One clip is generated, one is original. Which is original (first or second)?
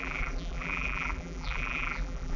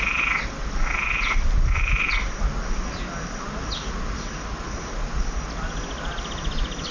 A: second